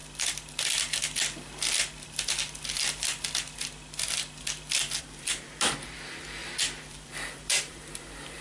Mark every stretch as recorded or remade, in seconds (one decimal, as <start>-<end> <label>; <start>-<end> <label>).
0.0-5.0 recorded; 5.0-8.4 remade